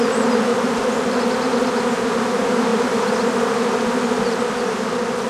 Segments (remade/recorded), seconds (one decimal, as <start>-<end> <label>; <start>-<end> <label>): 0.0-0.5 recorded; 0.5-1.2 remade; 1.2-2.7 recorded; 2.7-3.3 remade; 3.3-5.3 recorded

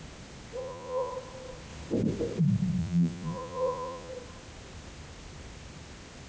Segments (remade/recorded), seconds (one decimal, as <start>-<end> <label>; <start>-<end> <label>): 0.0-0.6 recorded; 0.6-1.1 remade; 1.1-2.8 recorded; 2.8-4.1 remade; 4.1-6.3 recorded